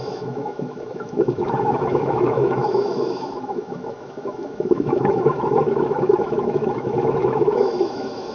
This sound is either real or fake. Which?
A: fake